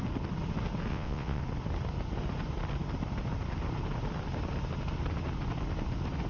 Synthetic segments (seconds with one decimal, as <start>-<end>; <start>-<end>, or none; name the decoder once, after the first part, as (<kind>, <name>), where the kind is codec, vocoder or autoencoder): 0.9-1.4 (vocoder, WaveNeXt)